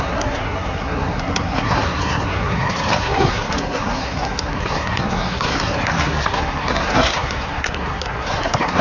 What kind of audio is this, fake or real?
fake